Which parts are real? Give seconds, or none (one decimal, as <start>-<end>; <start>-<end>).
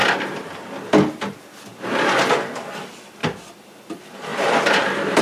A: 0.0-3.2; 3.9-4.3